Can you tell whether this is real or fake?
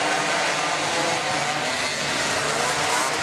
real